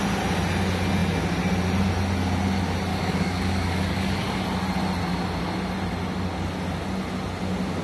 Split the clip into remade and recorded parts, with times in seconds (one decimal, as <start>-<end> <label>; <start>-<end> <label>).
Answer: 0.0-2.9 recorded; 2.9-4.4 remade; 4.4-7.8 recorded